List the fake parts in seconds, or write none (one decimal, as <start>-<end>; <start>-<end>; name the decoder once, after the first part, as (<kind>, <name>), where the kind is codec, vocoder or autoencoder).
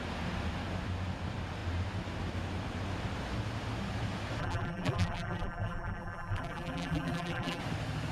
4.4-7.6 (vocoder, BigVGAN v2)